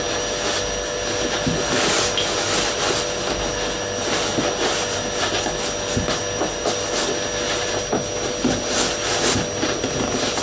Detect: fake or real real